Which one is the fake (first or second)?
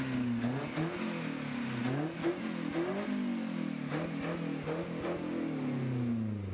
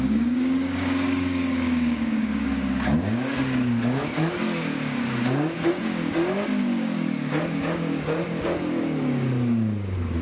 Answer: second